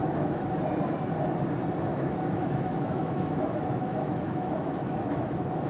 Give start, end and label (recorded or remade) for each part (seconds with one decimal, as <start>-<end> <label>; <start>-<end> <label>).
0.0-0.5 remade; 0.5-1.9 recorded; 1.9-5.3 remade; 5.3-5.7 recorded